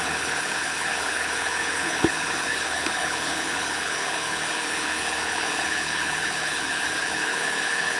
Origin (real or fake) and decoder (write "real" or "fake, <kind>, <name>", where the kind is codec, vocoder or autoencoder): fake, codec, HILCodec